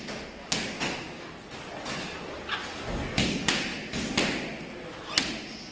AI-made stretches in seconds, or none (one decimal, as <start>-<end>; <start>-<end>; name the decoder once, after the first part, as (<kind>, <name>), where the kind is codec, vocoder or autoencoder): none